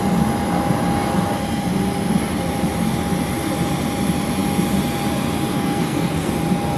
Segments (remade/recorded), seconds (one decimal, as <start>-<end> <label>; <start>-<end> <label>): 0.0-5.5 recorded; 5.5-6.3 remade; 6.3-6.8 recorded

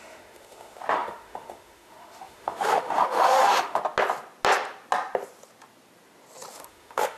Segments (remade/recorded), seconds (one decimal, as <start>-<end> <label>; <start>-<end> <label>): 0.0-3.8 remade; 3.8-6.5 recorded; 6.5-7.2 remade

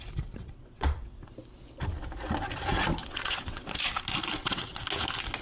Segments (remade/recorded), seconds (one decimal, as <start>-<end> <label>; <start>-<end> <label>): 0.0-0.4 recorded; 0.4-1.3 remade; 1.3-3.0 recorded; 3.0-3.7 remade; 3.7-4.3 recorded; 4.3-4.8 remade; 4.8-5.4 recorded